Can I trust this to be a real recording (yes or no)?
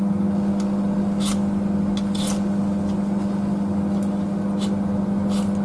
yes